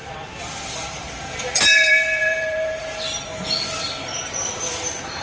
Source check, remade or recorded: remade